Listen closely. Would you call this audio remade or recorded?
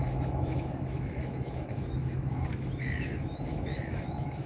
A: remade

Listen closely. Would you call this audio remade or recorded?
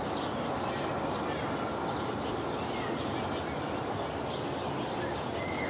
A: recorded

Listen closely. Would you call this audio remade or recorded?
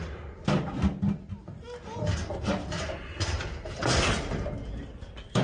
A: recorded